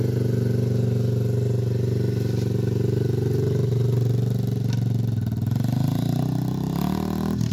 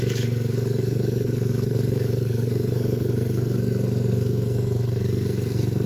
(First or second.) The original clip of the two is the first